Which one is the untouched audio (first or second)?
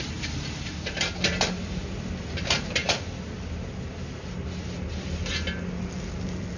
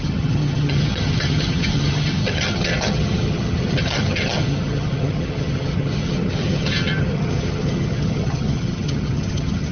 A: first